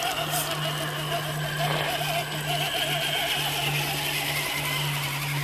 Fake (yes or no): no